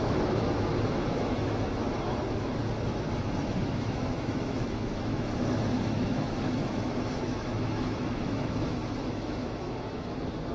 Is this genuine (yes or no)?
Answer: no